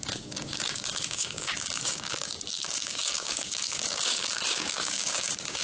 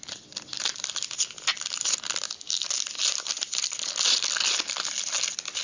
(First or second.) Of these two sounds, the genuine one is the second